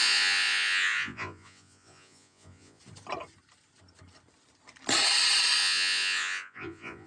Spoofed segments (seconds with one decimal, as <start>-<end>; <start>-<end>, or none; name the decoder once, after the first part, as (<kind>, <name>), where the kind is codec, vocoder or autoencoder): 0.0-2.8 (vocoder, Vocos); 5.6-7.1